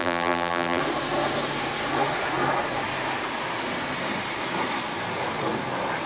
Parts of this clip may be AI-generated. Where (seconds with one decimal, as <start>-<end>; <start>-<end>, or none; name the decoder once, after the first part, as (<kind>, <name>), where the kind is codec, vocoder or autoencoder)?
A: 0.0-0.8 (vocoder, BigVGAN v2)